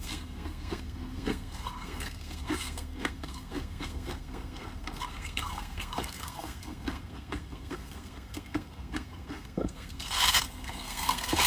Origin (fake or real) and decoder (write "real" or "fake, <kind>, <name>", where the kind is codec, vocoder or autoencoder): fake, codec, SNAC